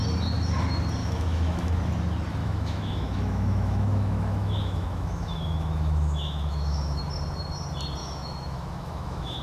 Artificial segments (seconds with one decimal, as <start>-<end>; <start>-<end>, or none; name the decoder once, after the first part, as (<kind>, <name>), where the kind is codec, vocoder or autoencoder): 1.0-1.8 (autoencoder, DAC-VAE); 2.4-7.0; 8.0-9.4